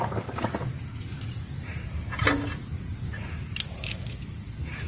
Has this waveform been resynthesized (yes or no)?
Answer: no